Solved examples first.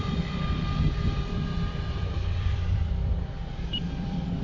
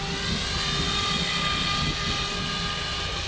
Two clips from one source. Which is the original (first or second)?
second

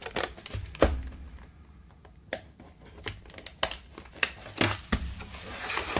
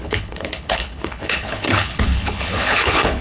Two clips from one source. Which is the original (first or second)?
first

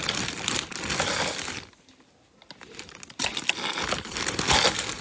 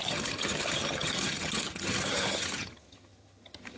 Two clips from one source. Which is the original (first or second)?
first